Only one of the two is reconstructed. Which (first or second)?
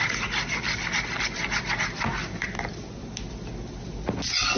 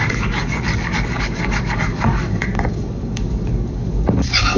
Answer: second